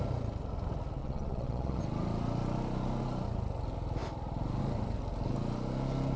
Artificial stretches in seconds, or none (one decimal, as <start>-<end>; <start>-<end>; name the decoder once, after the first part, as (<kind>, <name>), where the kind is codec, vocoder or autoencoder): 1.0-1.8 (vocoder, Vocos)

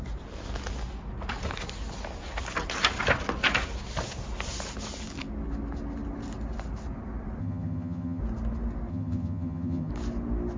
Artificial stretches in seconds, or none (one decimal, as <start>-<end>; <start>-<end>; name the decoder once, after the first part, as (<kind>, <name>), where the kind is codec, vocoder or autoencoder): 7.4-8.2 (vocoder, HiFi-GAN); 8.9-9.9

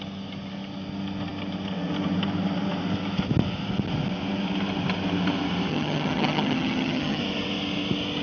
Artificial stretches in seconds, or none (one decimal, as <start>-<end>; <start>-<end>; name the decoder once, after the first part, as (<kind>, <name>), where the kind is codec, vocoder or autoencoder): 5.7-7.2 (vocoder, HiFi-GAN)

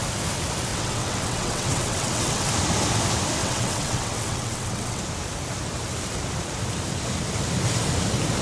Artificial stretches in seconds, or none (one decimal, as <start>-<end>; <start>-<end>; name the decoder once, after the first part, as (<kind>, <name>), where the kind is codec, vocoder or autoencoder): 0.7-2.5 (vocoder, WaveNeXt); 3.4-5.0